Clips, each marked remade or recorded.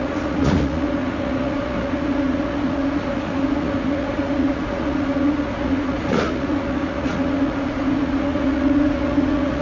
remade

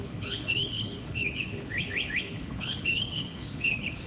remade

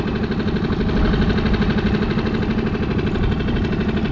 recorded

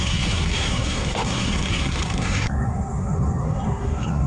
remade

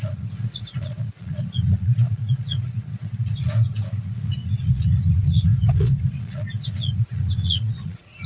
remade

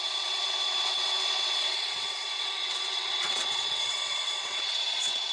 remade